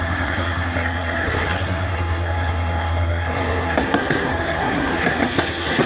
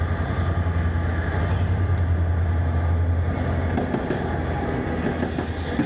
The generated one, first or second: first